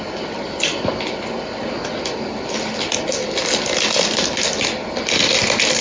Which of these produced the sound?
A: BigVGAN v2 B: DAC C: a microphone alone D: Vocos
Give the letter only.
C